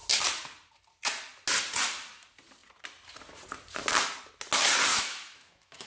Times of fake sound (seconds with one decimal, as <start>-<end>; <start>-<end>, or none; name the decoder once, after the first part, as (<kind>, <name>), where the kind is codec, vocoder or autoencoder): 4.9-5.9 (autoencoder, DAC-VAE)